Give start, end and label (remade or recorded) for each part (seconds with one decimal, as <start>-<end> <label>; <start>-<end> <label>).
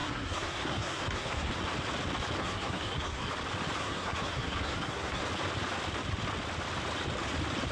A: 0.0-1.5 remade; 1.5-2.4 recorded; 2.4-3.3 remade; 3.3-3.8 recorded; 3.8-5.2 remade; 5.2-7.7 recorded